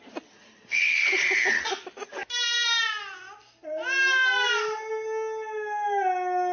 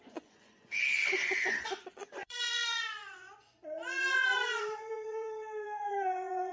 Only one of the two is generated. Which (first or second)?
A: second